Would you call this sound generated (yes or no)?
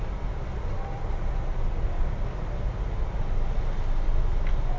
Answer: no